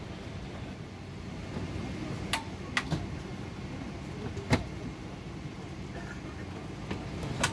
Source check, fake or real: real